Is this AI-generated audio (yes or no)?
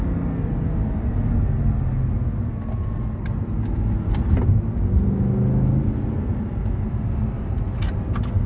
no